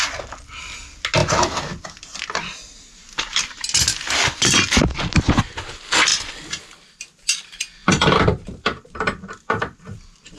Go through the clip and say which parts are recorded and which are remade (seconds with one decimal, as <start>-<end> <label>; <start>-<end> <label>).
0.0-10.4 recorded